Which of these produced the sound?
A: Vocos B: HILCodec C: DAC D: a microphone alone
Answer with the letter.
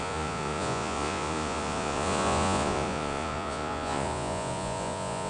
A